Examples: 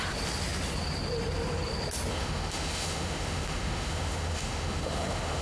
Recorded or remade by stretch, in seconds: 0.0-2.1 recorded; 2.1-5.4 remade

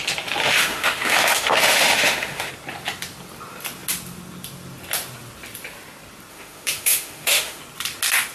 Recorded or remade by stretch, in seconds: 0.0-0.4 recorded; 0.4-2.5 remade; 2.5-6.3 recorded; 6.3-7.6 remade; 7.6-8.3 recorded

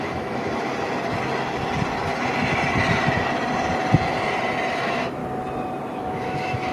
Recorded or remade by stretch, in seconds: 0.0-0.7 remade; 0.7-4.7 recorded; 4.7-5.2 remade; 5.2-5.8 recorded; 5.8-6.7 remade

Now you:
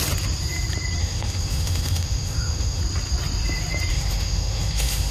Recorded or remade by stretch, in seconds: 0.0-1.0 recorded; 1.0-2.8 remade; 2.8-3.9 recorded; 3.9-5.1 remade

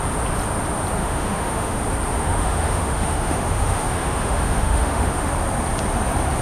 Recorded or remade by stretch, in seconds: 0.0-1.0 recorded; 1.0-1.8 remade; 1.8-2.2 recorded; 2.2-5.3 remade; 5.3-6.4 recorded

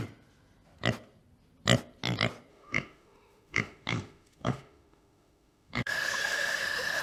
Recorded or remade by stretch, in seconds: 0.0-2.5 recorded; 2.5-7.0 remade